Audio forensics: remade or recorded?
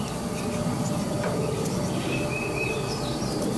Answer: recorded